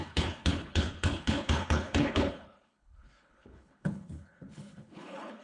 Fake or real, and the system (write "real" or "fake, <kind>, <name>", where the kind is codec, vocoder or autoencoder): fake, codec, HILCodec